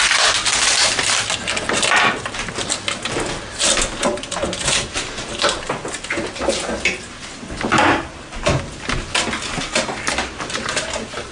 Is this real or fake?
real